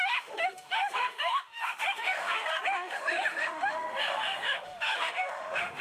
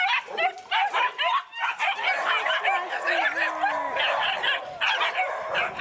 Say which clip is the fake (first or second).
first